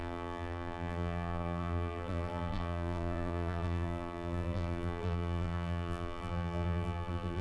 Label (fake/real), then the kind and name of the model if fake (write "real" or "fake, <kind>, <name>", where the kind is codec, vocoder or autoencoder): fake, vocoder, BigVGAN v2